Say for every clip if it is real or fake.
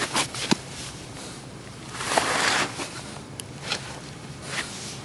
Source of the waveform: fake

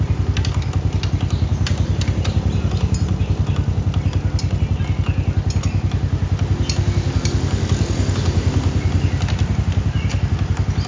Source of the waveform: real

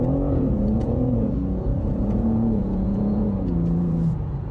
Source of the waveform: fake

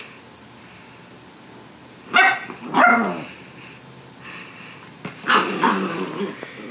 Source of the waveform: real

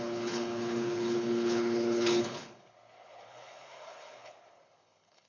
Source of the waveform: fake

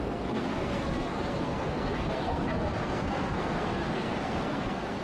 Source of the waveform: fake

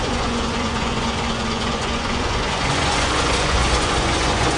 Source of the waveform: fake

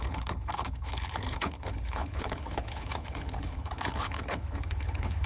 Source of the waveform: fake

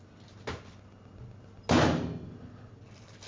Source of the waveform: real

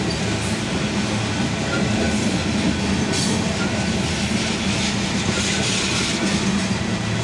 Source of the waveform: real